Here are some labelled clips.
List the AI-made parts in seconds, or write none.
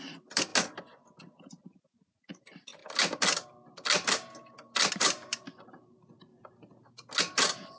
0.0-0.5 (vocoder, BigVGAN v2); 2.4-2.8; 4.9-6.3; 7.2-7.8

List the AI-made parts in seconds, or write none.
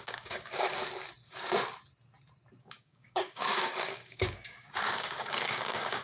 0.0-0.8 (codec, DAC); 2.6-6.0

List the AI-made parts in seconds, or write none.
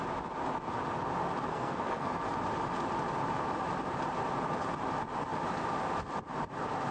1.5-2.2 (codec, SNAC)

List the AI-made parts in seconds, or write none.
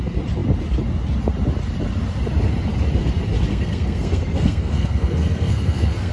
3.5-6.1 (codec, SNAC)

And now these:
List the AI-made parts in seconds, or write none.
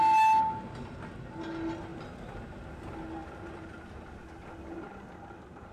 1.9-2.7 (vocoder, BigVGAN v2); 3.2-4.2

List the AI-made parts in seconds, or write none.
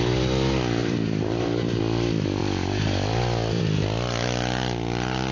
0.8-1.8 (vocoder, BigVGAN v2)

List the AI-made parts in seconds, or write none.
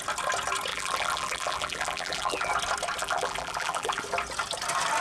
0.7-2.5 (vocoder, BigVGAN v2); 3.0-4.0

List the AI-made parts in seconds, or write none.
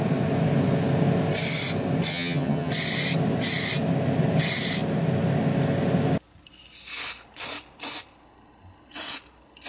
2.1-2.7 (vocoder, HiFi-GAN)